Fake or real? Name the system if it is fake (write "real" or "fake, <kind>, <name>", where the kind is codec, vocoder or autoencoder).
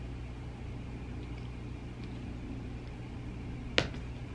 real